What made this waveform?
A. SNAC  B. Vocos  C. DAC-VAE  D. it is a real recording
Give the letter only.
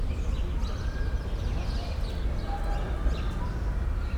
D